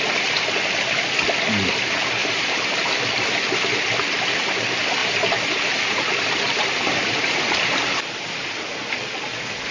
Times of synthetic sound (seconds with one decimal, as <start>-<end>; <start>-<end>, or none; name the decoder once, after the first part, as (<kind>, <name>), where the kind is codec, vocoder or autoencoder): 2.2-3.0 (vocoder, BigVGAN v2); 5.0-8.6